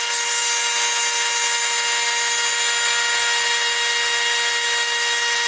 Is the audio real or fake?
real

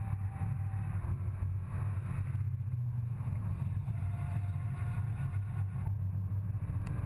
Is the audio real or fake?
real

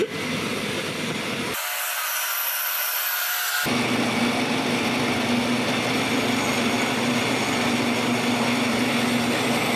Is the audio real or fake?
real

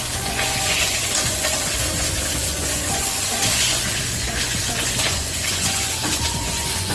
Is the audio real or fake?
fake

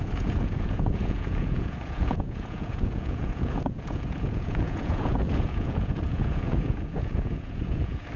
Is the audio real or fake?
fake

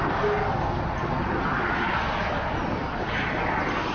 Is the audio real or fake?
real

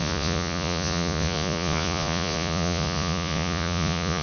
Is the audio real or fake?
fake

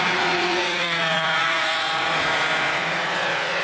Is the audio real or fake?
fake